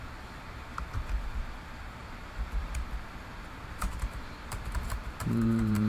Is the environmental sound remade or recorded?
remade